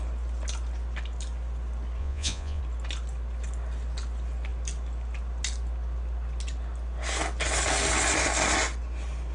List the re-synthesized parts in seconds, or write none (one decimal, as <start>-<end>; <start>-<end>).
2.0-2.6